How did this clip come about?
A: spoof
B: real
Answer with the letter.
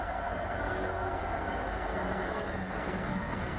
A